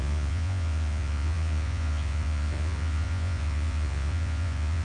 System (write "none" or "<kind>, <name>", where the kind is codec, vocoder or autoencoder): vocoder, Vocos